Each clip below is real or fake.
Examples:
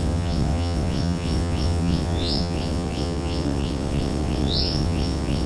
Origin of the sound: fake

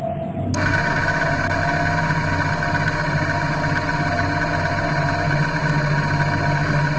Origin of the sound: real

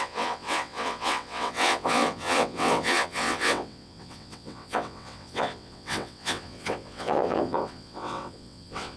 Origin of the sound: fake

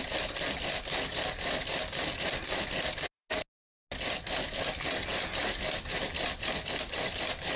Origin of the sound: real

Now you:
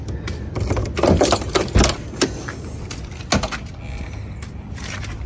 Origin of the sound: real